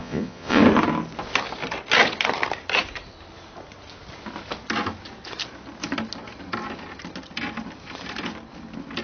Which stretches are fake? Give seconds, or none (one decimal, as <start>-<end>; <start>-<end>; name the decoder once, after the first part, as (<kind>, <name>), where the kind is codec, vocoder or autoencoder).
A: 0.0-0.6 (vocoder, Vocos)